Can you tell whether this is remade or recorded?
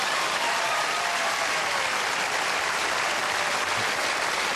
remade